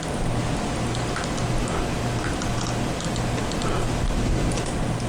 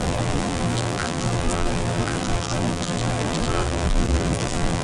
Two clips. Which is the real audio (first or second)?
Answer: first